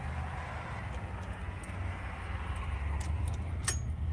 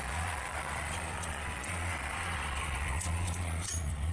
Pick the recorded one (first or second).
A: first